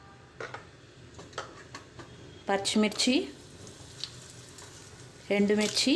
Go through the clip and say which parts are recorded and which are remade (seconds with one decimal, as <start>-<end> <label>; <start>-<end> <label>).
0.0-6.0 recorded